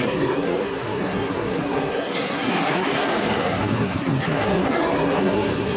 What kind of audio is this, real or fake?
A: fake